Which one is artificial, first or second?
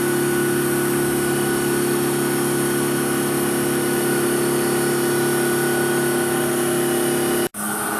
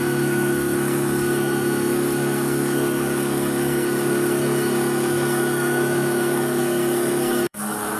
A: second